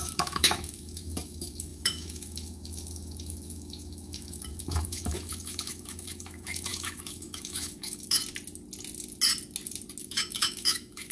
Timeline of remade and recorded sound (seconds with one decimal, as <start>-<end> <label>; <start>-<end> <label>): 0.0-8.2 remade; 8.2-10.0 recorded; 10.0-11.1 remade